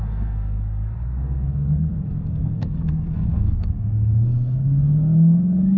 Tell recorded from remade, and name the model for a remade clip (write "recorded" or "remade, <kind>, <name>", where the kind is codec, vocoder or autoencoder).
remade, codec, SNAC